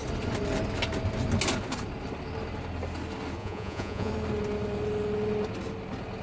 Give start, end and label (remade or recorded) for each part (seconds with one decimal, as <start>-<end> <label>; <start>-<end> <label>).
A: 0.0-3.4 recorded; 3.4-4.1 remade; 4.1-6.2 recorded

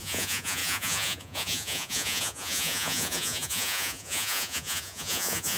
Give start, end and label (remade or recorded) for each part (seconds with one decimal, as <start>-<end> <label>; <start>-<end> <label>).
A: 0.0-5.6 remade

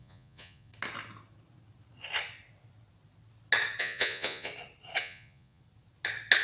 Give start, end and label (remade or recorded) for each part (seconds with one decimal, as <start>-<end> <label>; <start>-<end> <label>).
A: 0.0-0.7 remade; 0.7-3.8 recorded; 3.8-4.5 remade; 4.5-5.0 recorded; 5.0-5.6 remade; 5.6-6.4 recorded

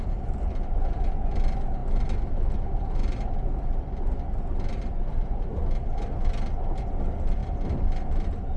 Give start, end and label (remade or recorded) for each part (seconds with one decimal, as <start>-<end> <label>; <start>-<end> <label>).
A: 0.0-8.6 recorded